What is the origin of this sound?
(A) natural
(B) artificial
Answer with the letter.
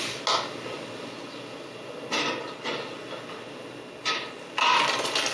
A